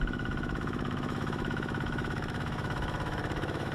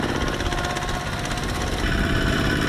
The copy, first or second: first